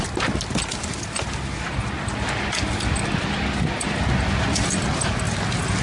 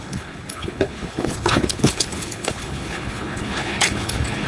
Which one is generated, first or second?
second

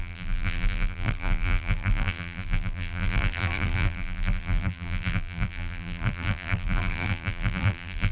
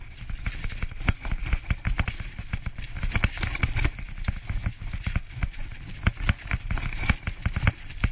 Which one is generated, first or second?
first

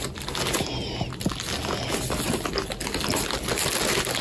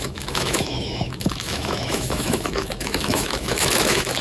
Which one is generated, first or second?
second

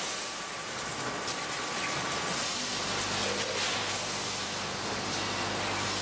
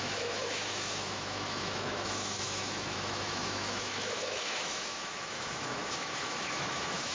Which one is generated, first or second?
second